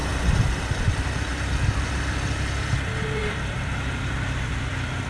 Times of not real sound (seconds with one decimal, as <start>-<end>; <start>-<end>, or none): 0.8-1.3; 3.2-5.1